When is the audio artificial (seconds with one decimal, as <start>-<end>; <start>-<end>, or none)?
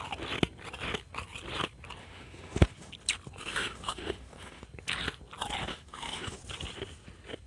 2.0-2.9; 3.4-4.6; 5.7-6.4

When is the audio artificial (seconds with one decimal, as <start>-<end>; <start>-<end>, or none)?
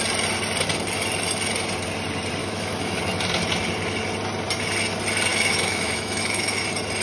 2.4-3.0; 5.3-6.6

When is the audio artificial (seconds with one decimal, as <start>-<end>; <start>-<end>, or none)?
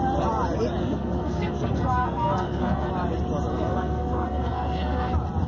0.8-2.9; 3.5-5.1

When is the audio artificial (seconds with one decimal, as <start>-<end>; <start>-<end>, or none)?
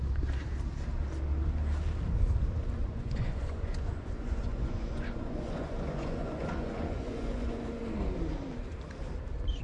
2.8-7.8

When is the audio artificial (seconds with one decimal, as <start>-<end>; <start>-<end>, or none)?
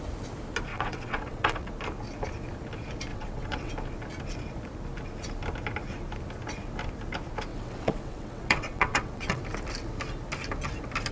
0.7-1.7; 3.1-3.7; 7.5-9.4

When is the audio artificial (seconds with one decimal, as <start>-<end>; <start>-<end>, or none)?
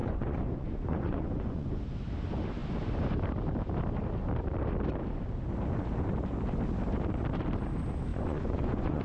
0.0-1.8; 8.1-9.0